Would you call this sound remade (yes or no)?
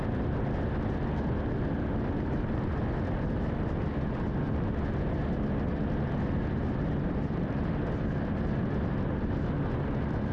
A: no